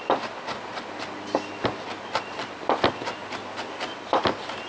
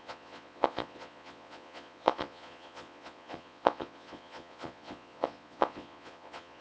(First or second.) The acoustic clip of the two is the first